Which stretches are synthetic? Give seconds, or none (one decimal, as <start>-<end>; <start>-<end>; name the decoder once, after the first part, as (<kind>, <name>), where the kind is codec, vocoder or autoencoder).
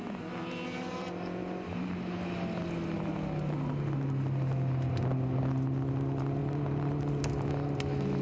6.4-7.2 (vocoder, BigVGAN v2)